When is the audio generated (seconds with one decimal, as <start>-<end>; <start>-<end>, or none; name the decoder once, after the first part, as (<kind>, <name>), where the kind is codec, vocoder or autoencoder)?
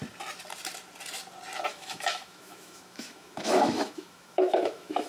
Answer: 1.7-5.1 (autoencoder, DAC-VAE)